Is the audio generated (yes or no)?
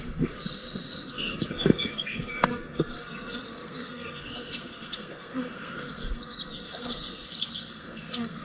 yes